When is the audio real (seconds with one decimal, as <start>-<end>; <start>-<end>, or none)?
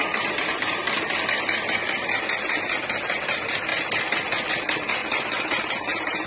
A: 0.8-3.2; 3.7-4.5